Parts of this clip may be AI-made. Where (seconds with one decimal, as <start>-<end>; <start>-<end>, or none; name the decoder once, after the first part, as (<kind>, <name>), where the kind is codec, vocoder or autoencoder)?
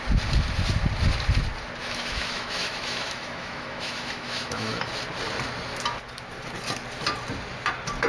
1.8-4.9 (autoencoder, DAC-VAE)